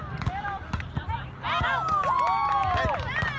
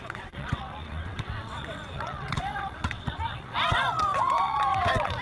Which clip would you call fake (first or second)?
second